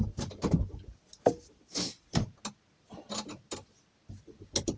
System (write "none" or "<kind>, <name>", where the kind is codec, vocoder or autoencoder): none